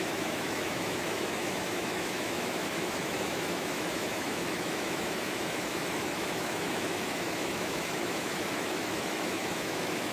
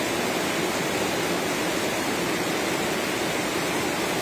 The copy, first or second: first